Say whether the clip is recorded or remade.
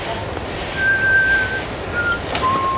recorded